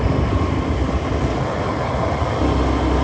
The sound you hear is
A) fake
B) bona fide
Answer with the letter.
B